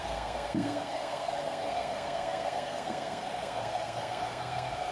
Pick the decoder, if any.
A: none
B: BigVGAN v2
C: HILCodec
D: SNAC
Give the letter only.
D